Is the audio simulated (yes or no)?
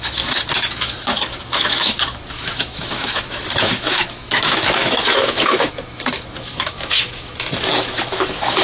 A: yes